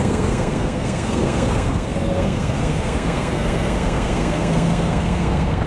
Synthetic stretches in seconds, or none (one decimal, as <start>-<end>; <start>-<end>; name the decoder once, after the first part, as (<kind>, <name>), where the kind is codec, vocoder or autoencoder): 0.0-5.7 (codec, SNAC)